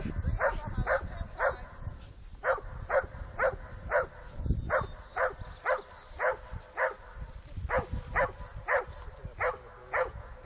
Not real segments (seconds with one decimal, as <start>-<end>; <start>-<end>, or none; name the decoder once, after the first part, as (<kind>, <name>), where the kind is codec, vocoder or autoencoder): 9.8-10.5 (vocoder, Vocos)

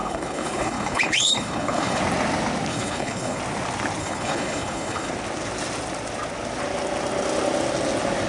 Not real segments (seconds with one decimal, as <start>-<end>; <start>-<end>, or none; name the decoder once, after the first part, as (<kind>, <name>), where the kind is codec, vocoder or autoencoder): 0.0-2.0 (codec, HILCodec); 2.7-3.4; 4.0-5.1

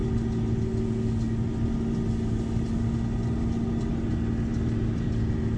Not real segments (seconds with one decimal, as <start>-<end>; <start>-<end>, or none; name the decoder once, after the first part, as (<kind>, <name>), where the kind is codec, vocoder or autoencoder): none

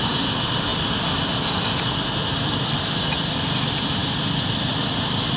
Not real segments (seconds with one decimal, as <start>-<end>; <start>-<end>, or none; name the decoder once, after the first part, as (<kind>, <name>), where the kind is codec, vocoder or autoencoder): none

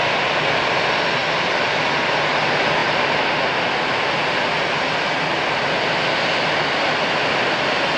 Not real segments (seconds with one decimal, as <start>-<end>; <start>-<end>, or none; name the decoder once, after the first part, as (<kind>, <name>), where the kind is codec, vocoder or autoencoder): none

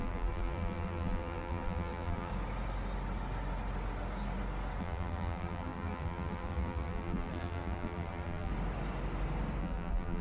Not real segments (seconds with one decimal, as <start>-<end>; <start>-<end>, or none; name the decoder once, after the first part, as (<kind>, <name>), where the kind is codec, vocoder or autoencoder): 0.0-2.3 (vocoder, BigVGAN v2); 4.8-8.5; 9.6-10.2

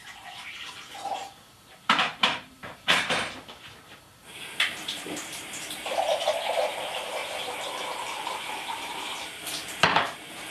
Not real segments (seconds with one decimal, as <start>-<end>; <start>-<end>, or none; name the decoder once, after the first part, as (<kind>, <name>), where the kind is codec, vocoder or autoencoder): 0.0-7.2 (vocoder, BigVGAN v2); 7.8-10.5

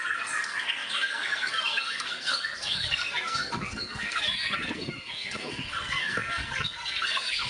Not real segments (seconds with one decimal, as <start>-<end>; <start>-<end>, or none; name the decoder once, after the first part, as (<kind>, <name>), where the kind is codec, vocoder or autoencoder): 0.0-7.5 (codec, SNAC)